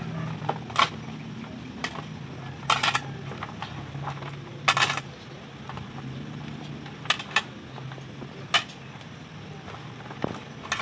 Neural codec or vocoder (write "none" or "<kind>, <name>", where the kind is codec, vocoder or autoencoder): none